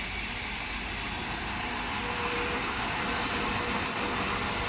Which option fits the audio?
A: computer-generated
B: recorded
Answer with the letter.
B